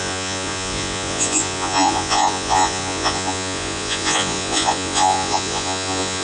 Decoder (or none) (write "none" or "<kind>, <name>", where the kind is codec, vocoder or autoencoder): vocoder, Vocos